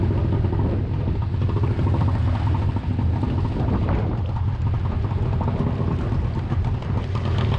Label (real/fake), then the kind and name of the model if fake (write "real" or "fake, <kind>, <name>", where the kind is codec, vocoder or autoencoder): real